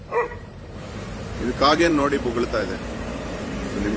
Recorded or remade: remade